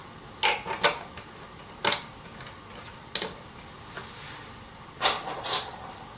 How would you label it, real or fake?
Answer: real